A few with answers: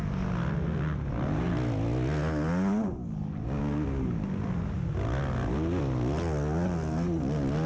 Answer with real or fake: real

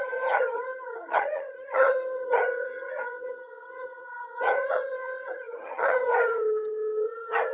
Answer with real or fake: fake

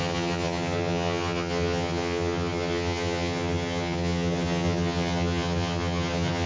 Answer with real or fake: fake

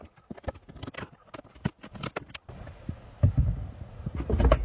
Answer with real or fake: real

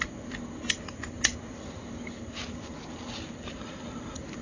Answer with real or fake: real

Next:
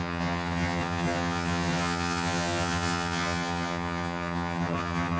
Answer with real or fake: fake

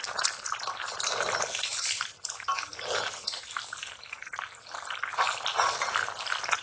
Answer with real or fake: real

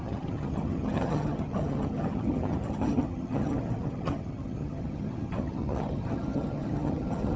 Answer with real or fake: fake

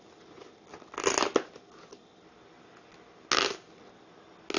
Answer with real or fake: real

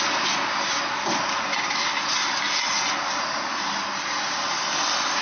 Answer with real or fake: real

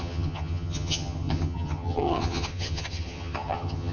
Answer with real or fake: fake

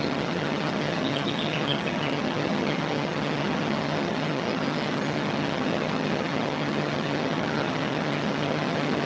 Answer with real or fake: fake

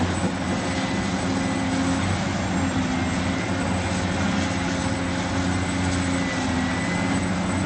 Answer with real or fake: real